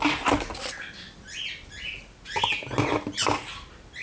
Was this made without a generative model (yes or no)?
yes